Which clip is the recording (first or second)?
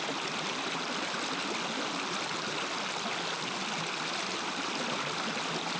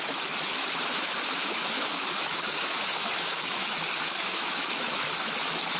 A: first